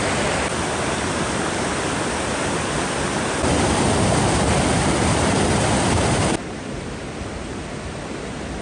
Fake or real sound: real